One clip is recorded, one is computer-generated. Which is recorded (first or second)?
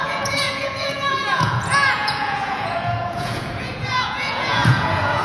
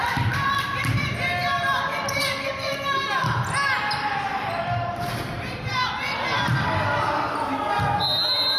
second